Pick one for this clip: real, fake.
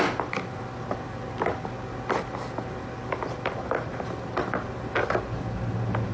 real